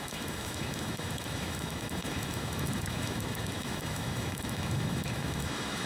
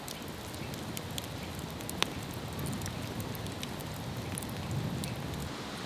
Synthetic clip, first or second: first